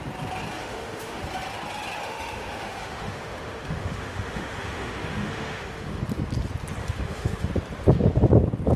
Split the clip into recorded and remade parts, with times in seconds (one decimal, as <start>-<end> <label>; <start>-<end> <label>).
0.0-0.6 recorded; 0.6-1.2 remade; 1.2-2.0 recorded; 2.0-6.0 remade; 6.0-6.8 recorded; 6.8-7.5 remade; 7.5-8.8 recorded